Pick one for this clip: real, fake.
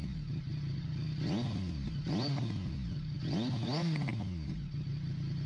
real